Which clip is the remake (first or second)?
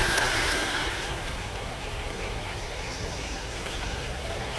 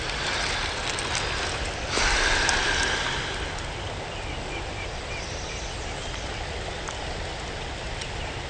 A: first